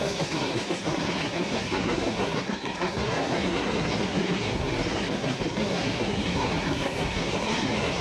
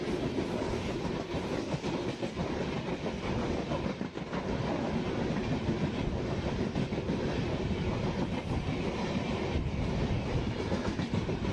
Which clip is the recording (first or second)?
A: second